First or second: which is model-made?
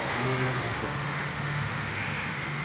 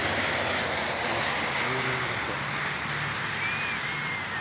first